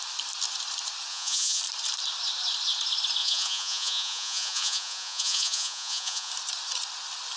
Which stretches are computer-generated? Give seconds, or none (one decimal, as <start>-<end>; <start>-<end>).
1.1-1.6; 3.2-6.3

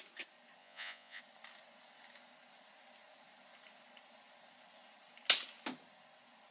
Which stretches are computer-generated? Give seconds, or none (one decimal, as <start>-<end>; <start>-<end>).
0.6-1.2

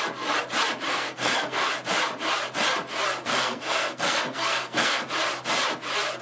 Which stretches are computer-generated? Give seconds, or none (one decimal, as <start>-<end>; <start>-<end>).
0.9-1.7; 3.2-5.1